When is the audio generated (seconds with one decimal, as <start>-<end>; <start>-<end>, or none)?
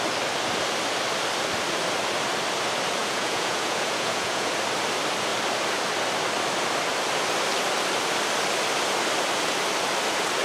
3.0-4.5